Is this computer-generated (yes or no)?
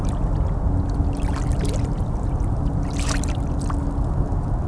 no